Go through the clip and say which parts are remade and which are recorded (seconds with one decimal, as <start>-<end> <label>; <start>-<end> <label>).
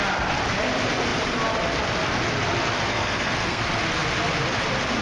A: 0.0-2.9 recorded; 2.9-3.6 remade; 3.6-5.0 recorded